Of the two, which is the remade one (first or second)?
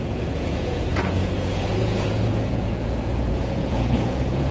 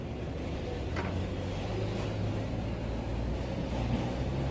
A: first